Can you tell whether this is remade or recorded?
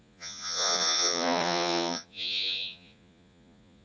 remade